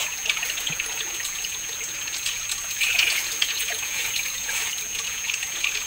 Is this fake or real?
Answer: fake